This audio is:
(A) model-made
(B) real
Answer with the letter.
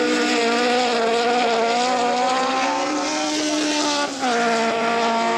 B